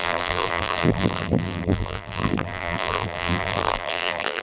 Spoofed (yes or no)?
yes